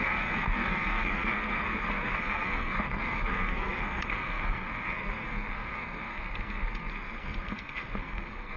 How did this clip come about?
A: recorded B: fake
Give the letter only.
B